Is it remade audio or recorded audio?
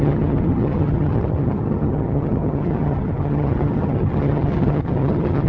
remade